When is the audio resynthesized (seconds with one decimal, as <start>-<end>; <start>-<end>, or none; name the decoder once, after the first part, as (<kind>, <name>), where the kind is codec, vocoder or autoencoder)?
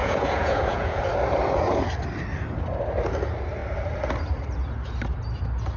0.0-1.0 (vocoder, Vocos)